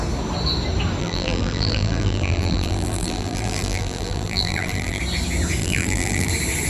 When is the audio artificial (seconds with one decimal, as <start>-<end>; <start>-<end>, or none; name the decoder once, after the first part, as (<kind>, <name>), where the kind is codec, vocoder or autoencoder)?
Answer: 1.0-5.0 (vocoder, BigVGAN v2); 5.6-6.3